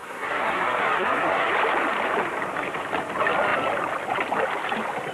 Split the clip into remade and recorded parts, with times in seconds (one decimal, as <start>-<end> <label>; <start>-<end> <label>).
0.0-1.5 remade; 1.5-5.1 recorded